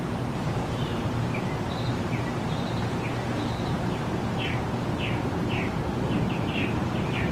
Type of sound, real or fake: fake